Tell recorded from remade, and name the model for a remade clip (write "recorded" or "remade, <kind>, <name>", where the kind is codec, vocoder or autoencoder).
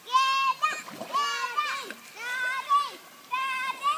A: recorded